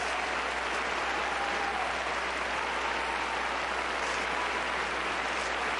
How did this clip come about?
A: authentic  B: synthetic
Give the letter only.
A